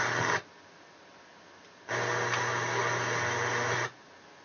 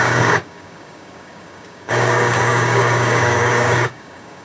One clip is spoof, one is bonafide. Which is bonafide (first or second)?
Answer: first